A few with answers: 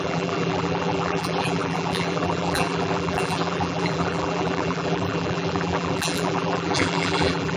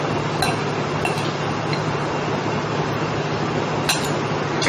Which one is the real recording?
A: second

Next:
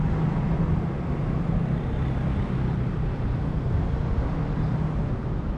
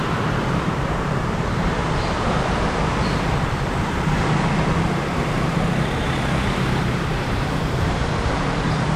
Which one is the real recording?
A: first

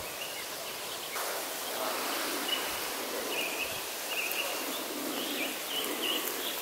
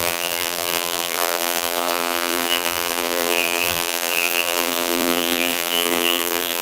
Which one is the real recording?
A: first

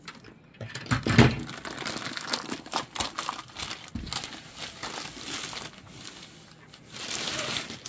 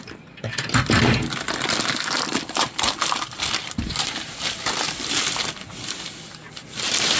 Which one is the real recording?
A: first